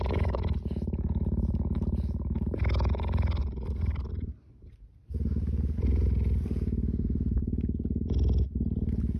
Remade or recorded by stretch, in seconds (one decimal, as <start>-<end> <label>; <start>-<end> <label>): 0.0-3.4 recorded; 3.4-4.6 remade; 4.6-9.2 recorded